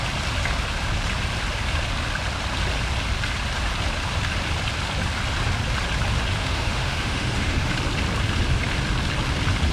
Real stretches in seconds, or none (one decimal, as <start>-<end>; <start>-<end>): 0.0-6.4; 7.7-9.7